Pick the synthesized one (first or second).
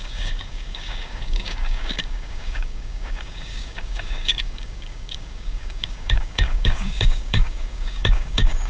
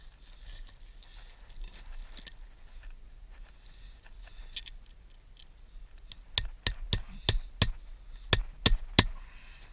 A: first